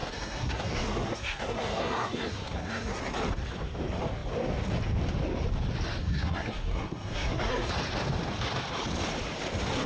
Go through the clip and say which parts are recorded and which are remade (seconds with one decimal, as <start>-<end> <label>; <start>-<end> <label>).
0.0-3.0 remade; 3.0-6.0 recorded; 6.0-7.7 remade; 7.7-9.9 recorded